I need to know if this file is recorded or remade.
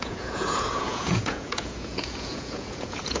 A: remade